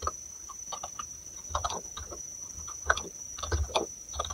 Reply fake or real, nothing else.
fake